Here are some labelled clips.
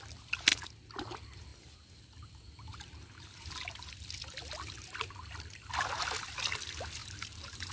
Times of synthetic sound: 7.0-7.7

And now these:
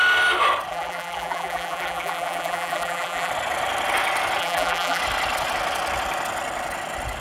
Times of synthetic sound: 0.7-3.3; 4.4-5.0

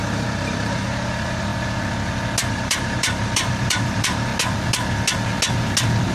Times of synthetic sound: 0.0-1.5; 2.5-4.3